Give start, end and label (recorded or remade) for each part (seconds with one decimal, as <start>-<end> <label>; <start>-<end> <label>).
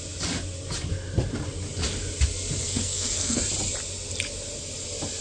0.0-2.6 recorded; 2.6-3.4 remade; 3.4-5.2 recorded